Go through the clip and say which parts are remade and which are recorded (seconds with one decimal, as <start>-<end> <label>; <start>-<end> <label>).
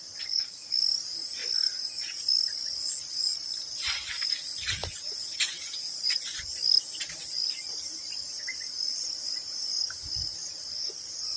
0.0-4.8 recorded; 4.8-6.4 remade; 6.4-11.4 recorded